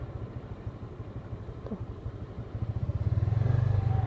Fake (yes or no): yes